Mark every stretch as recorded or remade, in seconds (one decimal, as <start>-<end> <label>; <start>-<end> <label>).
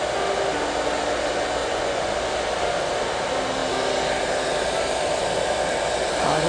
0.0-1.6 recorded; 1.6-2.1 remade; 2.1-6.5 recorded